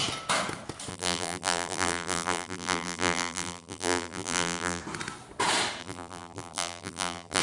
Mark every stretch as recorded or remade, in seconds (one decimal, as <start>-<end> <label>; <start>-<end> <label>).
0.0-0.9 recorded; 0.9-4.8 remade; 4.8-5.8 recorded; 5.8-7.4 remade